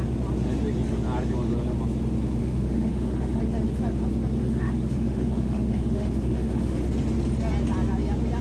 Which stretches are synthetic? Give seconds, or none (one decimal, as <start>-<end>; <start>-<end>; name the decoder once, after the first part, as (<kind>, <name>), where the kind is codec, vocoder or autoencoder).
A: 2.4-3.4 (autoencoder, DAC-VAE); 4.4-6.8